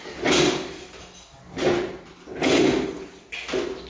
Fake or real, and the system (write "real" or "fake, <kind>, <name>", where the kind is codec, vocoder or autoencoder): real